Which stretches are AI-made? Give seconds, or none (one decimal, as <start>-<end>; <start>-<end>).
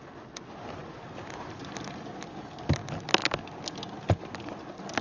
none